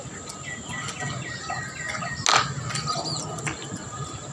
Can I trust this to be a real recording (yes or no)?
yes